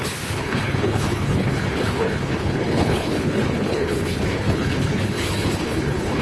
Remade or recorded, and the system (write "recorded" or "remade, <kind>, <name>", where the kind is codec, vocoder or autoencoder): remade, codec, HILCodec